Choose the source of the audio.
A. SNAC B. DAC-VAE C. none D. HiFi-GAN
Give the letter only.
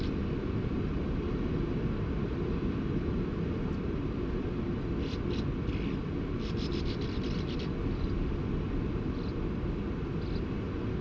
C